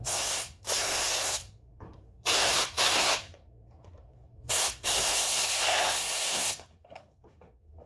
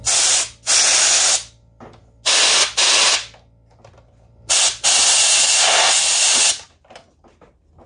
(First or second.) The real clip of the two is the second